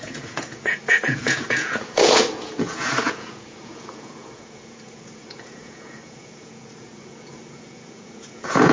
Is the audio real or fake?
fake